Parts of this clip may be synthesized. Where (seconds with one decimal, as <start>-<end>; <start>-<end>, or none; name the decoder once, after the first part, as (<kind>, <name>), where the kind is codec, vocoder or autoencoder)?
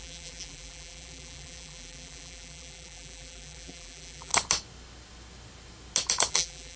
0.0-4.3 (vocoder, BigVGAN v2); 6.3-6.8